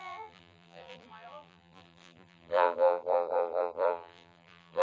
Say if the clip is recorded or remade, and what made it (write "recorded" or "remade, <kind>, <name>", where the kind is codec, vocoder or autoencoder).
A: remade, vocoder, BigVGAN v2